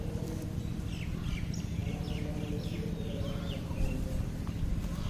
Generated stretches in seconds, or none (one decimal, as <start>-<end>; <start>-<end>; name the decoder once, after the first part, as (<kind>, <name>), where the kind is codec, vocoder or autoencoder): none